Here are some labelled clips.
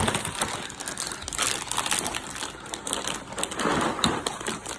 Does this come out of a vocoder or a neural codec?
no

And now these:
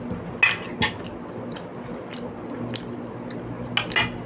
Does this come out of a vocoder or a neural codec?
no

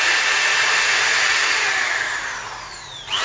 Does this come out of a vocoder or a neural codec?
no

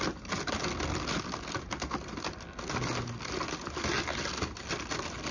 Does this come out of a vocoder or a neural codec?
no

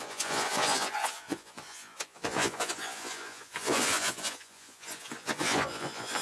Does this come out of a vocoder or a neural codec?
yes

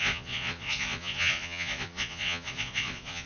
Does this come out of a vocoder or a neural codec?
yes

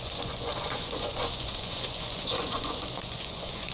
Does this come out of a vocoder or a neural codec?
yes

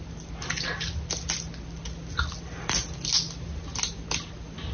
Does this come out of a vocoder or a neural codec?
no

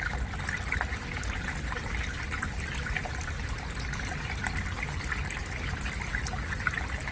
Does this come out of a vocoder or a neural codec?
no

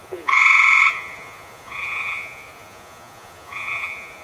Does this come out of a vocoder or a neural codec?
yes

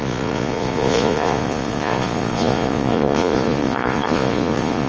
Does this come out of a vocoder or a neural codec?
yes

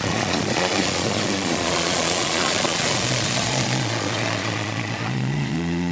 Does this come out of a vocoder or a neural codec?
yes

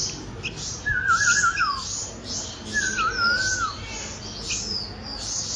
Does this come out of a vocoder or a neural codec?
no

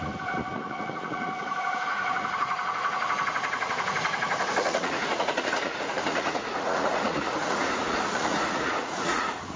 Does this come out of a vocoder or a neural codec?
yes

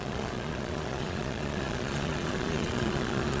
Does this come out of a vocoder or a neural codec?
yes